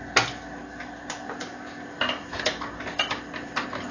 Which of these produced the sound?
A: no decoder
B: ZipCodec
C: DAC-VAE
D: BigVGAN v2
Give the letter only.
A